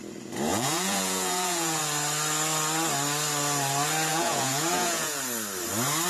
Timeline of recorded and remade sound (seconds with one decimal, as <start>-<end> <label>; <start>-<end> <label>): 0.0-0.5 recorded; 0.5-1.8 remade; 1.8-4.1 recorded; 4.1-5.2 remade; 5.2-6.1 recorded